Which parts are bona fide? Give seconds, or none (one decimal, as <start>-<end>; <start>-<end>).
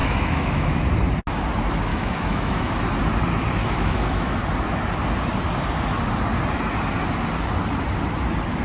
0.8-1.9; 2.7-3.6; 4.4-8.6